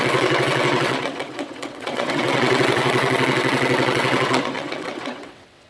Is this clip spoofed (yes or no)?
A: yes